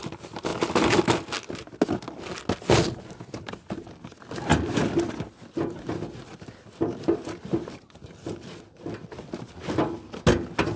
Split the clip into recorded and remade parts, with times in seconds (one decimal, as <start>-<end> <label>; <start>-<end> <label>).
0.0-10.8 recorded